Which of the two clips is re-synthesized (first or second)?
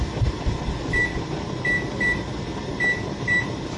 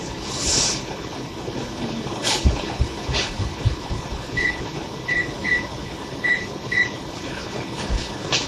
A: second